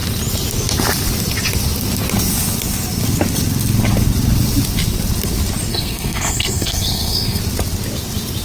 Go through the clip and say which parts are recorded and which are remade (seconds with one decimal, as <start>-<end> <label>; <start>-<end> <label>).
0.0-5.7 recorded; 5.7-7.4 remade; 7.4-8.4 recorded

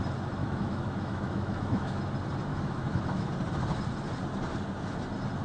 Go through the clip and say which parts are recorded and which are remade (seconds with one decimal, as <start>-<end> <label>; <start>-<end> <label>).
0.0-0.4 recorded; 0.4-2.0 remade; 2.0-2.5 recorded; 2.5-3.3 remade; 3.3-5.4 recorded

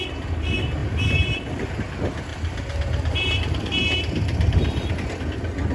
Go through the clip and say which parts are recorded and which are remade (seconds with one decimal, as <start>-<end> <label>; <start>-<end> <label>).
0.0-0.8 recorded; 0.8-1.7 remade; 1.7-2.3 recorded; 2.3-4.9 remade; 4.9-5.7 recorded

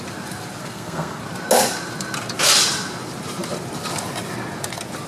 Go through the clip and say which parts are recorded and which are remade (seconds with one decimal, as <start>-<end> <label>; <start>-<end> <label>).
0.0-0.6 recorded; 0.6-1.2 remade; 1.2-5.1 recorded

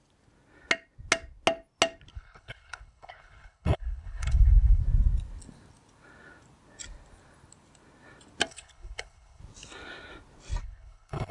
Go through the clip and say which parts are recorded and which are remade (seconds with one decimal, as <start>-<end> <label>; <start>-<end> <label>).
0.0-2.1 recorded; 2.1-4.8 remade; 4.8-8.5 recorded; 8.5-9.4 remade; 9.4-10.6 recorded; 10.6-11.3 remade

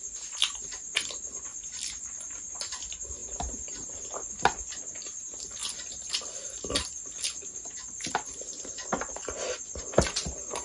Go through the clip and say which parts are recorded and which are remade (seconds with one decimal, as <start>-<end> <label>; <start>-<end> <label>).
0.0-10.6 recorded